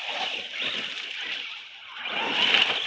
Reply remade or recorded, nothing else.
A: recorded